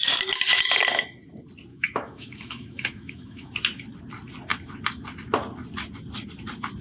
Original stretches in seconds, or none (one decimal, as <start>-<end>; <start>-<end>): 0.0-1.7; 3.5-6.8